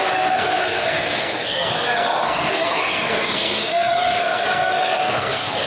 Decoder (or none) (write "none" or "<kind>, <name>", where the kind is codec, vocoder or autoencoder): codec, SNAC